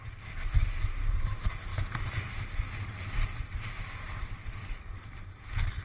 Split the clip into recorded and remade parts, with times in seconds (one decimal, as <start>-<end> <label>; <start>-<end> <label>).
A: 0.0-5.8 recorded